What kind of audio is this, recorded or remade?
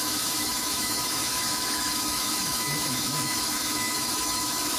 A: remade